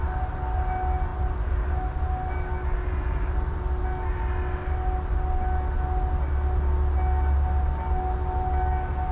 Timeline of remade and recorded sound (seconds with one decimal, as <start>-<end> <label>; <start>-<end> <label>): 0.0-9.1 recorded